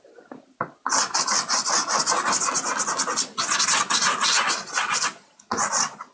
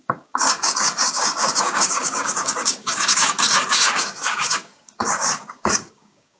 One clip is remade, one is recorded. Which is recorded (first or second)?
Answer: first